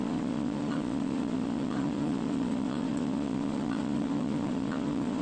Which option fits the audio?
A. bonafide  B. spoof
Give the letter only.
B